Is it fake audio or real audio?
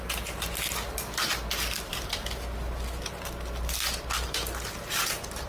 real